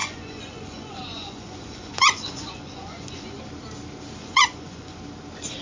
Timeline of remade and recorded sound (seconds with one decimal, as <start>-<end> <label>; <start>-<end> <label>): 0.0-3.4 remade; 3.4-4.2 recorded; 4.2-5.0 remade; 5.0-5.6 recorded

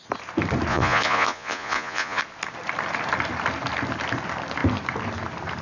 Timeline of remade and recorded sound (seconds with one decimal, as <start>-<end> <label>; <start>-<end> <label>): 0.0-0.7 recorded; 0.7-2.2 remade; 2.2-5.6 recorded

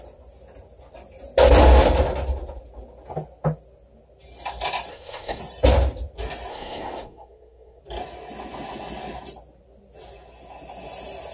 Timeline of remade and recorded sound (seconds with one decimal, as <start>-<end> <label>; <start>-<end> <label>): 0.0-4.9 recorded; 4.9-5.4 remade; 5.4-6.5 recorded; 6.5-7.8 remade; 7.8-11.3 recorded

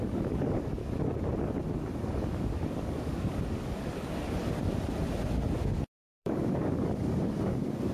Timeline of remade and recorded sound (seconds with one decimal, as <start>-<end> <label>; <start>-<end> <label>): 0.0-0.8 remade; 0.8-2.0 recorded; 2.0-4.4 remade; 4.4-5.6 recorded; 5.6-7.9 remade

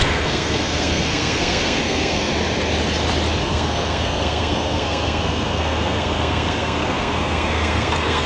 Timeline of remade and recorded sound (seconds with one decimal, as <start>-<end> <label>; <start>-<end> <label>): 0.0-2.3 remade; 2.3-3.4 recorded; 3.4-8.3 remade

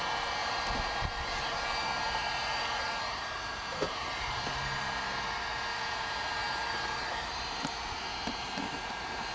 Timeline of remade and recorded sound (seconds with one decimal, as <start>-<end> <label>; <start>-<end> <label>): 0.0-9.3 remade